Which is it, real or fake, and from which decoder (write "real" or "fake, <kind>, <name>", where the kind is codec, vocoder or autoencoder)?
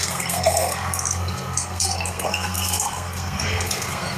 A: fake, codec, SNAC